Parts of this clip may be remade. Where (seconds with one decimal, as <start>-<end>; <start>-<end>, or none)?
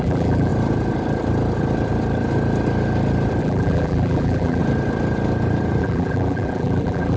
0.0-0.5; 3.4-4.6; 5.8-7.2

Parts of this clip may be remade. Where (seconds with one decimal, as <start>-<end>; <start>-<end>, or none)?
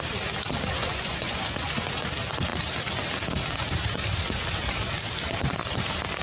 0.8-2.1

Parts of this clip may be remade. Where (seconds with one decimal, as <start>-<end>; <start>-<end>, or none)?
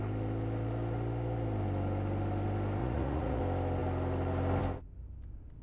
2.8-3.4